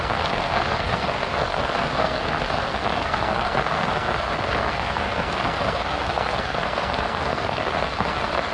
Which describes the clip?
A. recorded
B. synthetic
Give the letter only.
B